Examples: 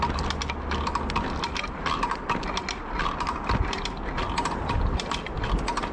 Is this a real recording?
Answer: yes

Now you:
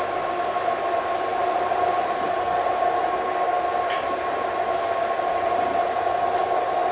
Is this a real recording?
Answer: yes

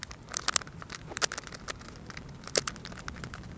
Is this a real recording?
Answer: yes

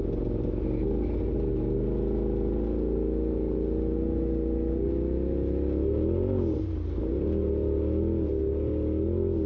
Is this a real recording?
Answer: yes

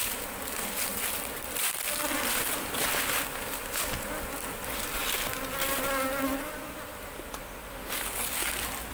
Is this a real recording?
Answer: yes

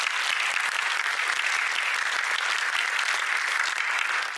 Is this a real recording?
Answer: yes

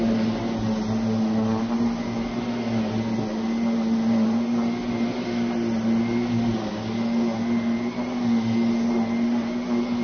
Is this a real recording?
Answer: yes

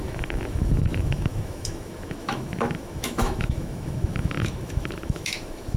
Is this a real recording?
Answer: no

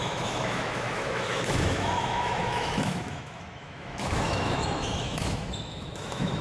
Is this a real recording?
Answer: no